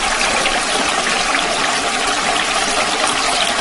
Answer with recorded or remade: recorded